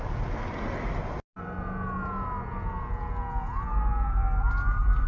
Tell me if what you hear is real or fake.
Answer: real